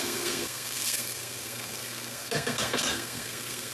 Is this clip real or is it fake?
fake